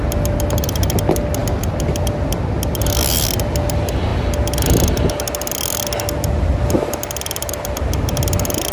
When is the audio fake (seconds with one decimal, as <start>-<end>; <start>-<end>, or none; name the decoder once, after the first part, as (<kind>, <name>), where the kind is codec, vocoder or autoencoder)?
none